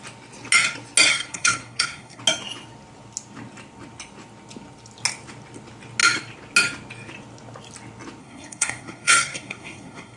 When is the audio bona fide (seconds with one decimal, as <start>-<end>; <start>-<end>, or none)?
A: 0.0-1.1; 2.2-8.2